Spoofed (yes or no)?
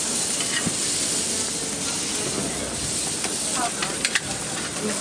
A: no